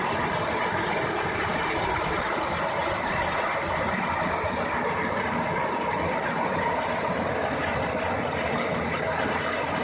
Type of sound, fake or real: real